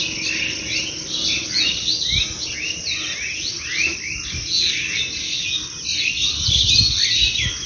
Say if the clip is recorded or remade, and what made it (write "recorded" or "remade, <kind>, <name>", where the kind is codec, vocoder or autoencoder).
recorded